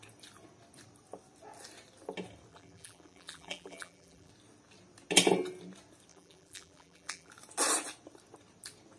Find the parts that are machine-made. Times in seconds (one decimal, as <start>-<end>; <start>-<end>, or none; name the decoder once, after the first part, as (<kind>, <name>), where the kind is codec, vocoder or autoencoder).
2.5-4.3 (vocoder, BigVGAN v2); 6.1-7.3